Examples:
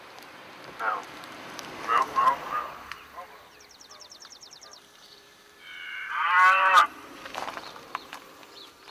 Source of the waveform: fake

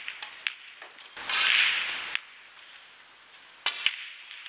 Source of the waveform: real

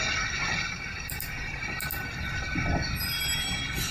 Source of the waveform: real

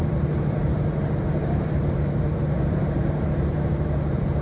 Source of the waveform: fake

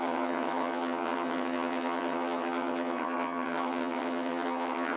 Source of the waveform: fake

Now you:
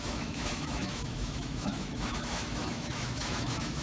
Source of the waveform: fake